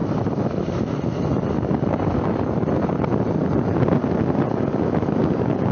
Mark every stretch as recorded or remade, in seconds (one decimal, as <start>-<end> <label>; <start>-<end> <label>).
0.0-5.7 recorded